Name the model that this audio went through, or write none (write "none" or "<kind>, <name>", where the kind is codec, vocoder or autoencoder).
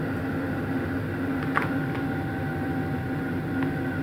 none